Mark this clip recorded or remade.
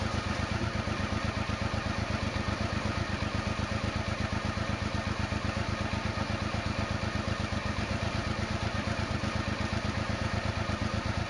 recorded